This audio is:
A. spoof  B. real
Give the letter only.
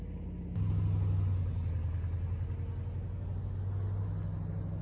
B